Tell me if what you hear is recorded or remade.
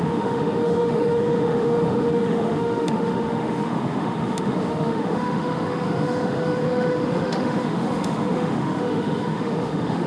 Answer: remade